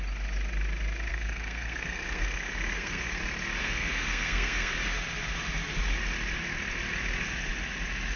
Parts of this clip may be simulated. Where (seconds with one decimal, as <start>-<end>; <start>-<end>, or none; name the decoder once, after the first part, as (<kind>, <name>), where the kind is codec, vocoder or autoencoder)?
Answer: 1.1-3.2 (codec, SNAC); 3.6-4.7